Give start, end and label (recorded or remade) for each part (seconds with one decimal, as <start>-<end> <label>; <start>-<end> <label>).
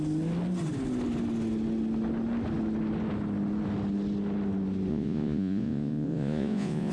0.0-4.9 recorded; 4.9-6.9 remade